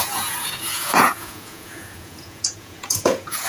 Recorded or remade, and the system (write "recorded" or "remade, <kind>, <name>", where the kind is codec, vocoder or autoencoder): remade, vocoder, Vocos